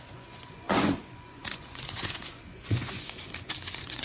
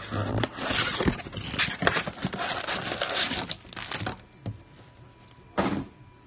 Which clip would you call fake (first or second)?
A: first